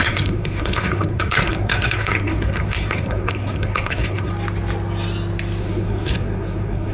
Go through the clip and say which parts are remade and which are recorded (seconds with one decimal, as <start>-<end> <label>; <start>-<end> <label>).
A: 0.0-4.3 remade; 4.3-5.6 recorded; 5.6-6.9 remade